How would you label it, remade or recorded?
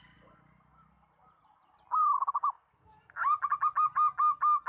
recorded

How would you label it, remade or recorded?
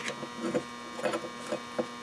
recorded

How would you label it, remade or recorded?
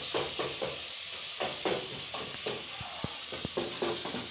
remade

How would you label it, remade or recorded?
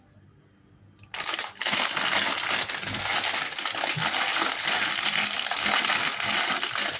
recorded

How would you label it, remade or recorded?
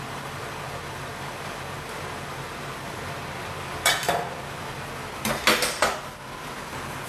recorded